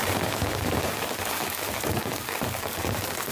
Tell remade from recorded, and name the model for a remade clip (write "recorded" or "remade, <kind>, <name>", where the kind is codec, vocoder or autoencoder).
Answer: remade, codec, DAC